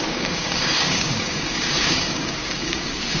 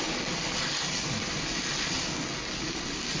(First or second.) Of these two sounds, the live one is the second